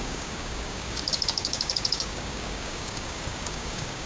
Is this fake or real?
fake